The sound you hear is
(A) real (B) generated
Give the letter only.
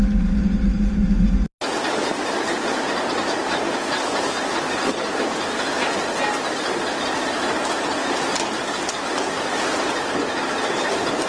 A